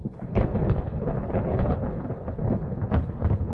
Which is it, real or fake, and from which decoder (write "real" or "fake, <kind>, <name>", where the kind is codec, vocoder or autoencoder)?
fake, codec, HILCodec